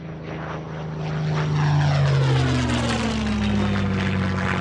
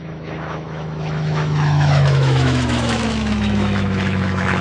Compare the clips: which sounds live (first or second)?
first